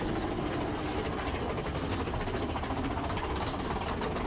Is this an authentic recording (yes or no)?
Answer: yes